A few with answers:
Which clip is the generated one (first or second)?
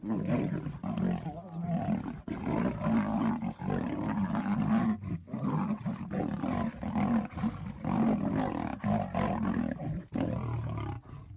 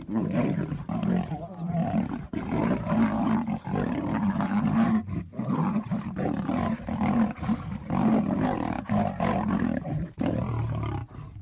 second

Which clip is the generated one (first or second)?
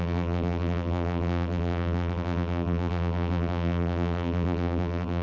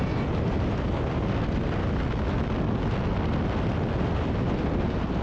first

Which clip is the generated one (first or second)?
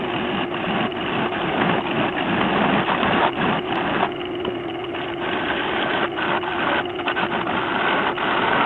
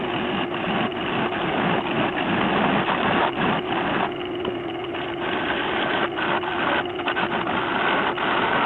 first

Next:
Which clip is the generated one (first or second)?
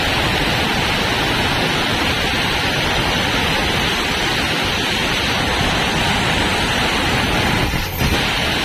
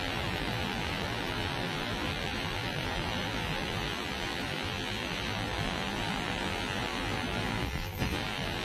second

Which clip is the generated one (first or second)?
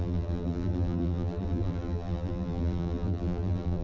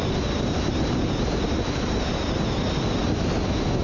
first